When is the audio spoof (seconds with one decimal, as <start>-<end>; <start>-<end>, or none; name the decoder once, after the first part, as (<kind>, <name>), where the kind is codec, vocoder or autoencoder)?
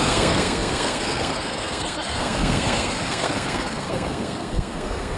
0.0-5.2 (codec, SNAC)